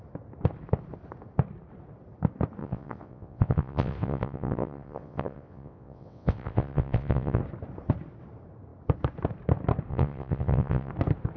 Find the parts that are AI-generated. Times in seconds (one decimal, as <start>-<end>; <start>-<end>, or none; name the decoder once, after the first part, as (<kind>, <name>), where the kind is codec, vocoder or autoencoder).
2.6-7.4 (vocoder, WaveNeXt); 9.9-10.9